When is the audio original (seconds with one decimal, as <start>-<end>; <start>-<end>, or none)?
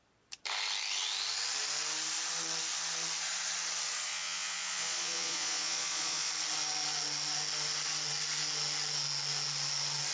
0.0-4.1; 6.3-10.1